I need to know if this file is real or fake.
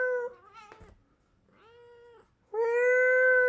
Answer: real